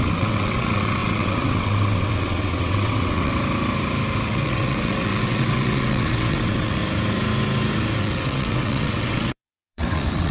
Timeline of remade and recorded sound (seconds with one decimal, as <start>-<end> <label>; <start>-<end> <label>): 0.0-3.3 remade; 3.3-4.3 recorded; 4.3-6.8 remade; 6.8-8.0 recorded; 8.0-10.3 remade